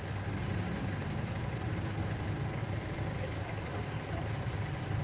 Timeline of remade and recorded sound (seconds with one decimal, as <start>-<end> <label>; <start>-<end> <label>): 0.0-1.0 recorded; 1.0-1.7 remade; 1.7-2.6 recorded; 2.6-4.5 remade; 4.5-5.0 recorded